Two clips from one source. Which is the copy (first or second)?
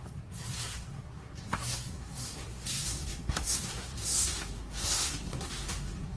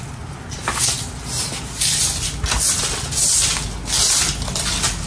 first